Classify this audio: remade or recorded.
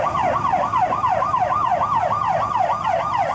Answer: recorded